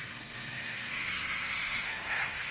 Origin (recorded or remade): remade